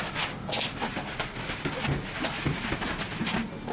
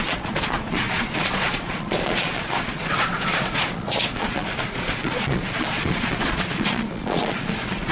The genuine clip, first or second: first